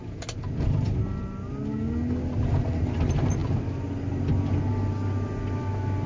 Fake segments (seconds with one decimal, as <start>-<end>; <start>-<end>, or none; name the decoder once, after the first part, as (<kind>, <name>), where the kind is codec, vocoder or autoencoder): none